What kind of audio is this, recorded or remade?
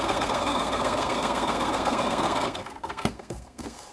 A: remade